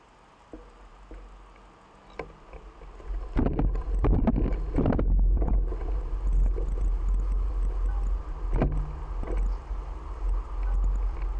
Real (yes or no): yes